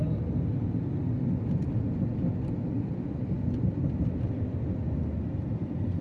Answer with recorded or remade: recorded